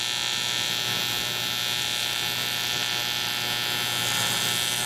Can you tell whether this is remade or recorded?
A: recorded